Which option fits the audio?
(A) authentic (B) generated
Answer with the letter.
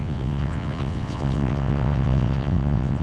B